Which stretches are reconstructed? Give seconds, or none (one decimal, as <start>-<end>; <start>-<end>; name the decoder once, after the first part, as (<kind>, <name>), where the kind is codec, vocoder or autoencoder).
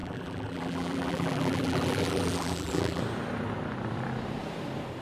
0.0-3.0 (vocoder, BigVGAN v2)